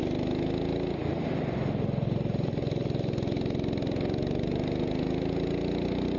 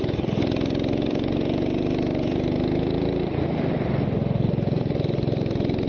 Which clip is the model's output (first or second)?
second